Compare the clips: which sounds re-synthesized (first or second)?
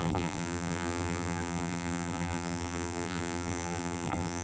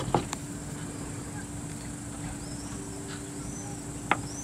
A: first